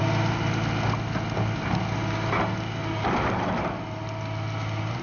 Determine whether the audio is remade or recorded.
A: recorded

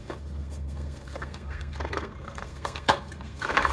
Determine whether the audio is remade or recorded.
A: remade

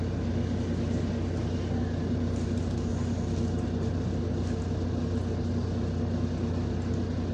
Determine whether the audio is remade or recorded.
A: recorded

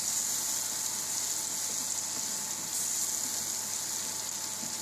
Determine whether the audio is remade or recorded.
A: recorded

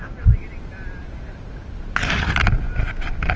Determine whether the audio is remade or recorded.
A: recorded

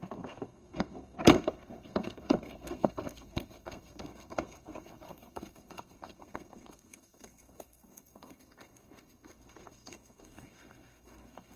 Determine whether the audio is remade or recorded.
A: remade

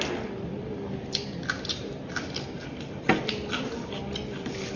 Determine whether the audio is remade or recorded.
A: recorded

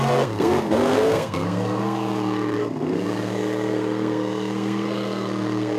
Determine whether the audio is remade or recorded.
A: remade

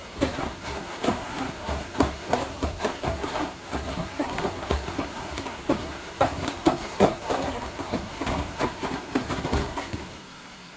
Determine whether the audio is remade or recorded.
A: remade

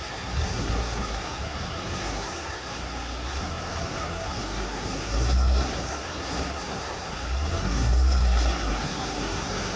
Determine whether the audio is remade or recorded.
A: remade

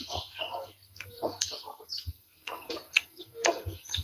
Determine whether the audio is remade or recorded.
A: remade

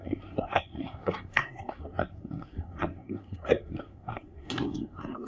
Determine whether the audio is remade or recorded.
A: remade